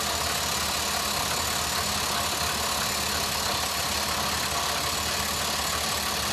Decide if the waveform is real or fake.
real